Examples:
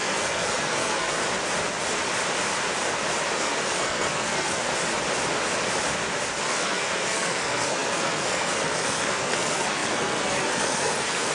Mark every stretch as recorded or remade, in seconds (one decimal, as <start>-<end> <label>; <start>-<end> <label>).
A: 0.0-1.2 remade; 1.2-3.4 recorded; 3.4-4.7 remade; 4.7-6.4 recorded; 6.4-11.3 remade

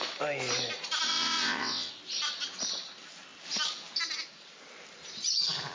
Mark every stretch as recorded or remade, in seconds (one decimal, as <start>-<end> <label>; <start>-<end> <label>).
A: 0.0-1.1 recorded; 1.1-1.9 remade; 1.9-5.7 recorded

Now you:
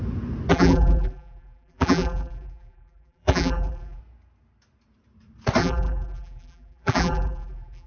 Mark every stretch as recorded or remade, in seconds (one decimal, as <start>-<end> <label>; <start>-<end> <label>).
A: 0.0-0.5 recorded; 0.5-4.0 remade; 4.0-5.6 recorded; 5.6-7.9 remade